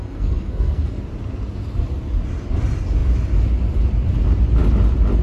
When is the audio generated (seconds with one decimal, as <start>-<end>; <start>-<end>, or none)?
0.0-1.0